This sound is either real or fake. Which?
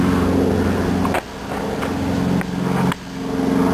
real